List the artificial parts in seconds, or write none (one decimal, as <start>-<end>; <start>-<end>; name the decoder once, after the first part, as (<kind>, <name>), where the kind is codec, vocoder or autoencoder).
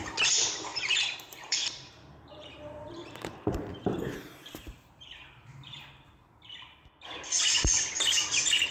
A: 0.7-5.9 (vocoder, BigVGAN v2)